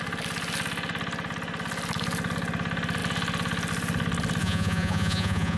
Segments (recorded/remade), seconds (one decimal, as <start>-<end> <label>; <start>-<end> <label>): 0.0-4.4 recorded; 4.4-5.6 remade